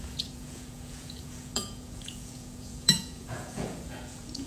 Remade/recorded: remade